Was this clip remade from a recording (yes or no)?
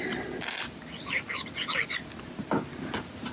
no